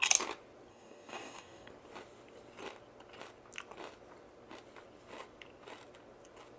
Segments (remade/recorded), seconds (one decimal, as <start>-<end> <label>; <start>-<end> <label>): 0.0-0.7 recorded; 0.7-1.7 remade; 1.7-6.6 recorded